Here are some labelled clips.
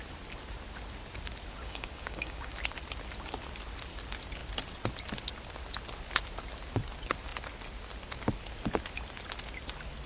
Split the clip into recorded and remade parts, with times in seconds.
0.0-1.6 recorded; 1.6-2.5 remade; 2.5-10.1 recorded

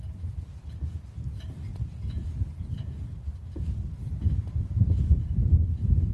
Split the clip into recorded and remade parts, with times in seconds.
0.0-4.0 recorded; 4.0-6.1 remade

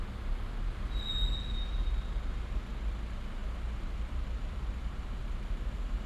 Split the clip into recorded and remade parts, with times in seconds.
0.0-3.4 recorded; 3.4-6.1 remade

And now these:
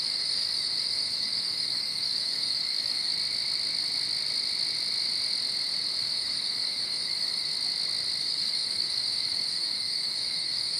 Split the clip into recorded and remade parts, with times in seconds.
0.0-3.1 remade; 3.1-6.0 recorded; 6.0-7.5 remade; 7.5-8.2 recorded; 8.2-10.8 remade

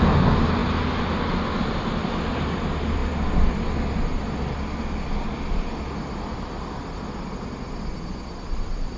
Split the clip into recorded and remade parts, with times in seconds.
0.0-9.0 recorded